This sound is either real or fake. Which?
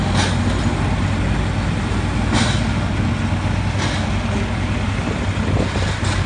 real